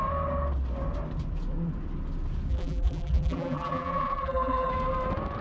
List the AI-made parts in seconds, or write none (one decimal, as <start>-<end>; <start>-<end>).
2.5-4.7